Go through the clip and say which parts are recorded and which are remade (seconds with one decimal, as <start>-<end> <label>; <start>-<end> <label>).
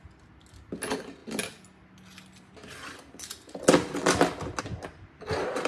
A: 0.0-5.7 recorded